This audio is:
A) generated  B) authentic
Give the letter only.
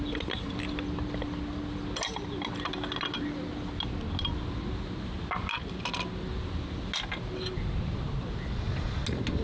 B